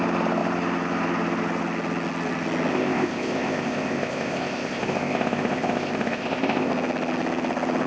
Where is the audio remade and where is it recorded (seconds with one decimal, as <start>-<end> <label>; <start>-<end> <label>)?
0.0-2.7 recorded; 2.7-6.7 remade; 6.7-7.9 recorded